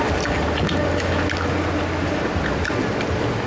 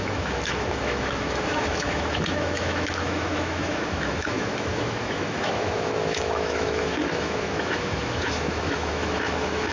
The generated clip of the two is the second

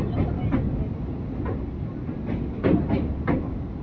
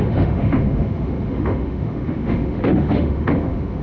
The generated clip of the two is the second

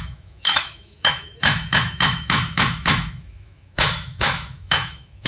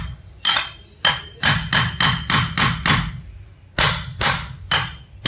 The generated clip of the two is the first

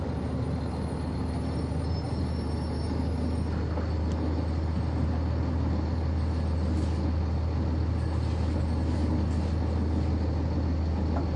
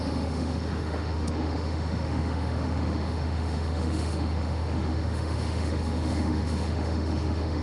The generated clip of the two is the second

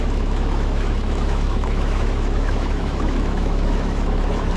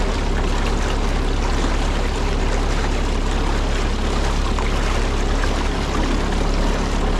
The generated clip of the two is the first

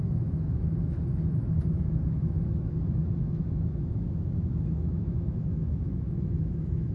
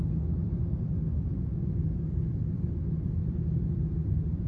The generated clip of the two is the first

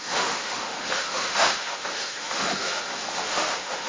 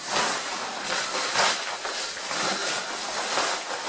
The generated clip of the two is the first